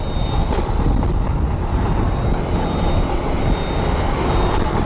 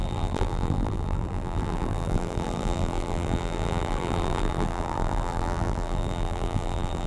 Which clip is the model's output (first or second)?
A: second